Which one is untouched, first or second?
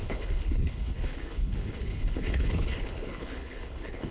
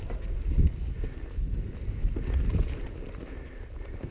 second